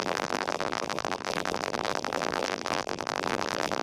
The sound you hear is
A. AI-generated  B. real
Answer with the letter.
A